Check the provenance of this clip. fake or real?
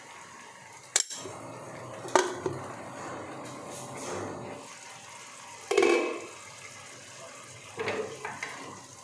real